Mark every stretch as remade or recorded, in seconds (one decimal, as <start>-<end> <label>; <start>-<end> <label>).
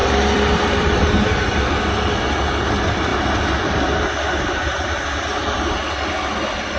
0.0-1.4 remade; 1.4-3.1 recorded; 3.1-3.7 remade; 3.7-6.8 recorded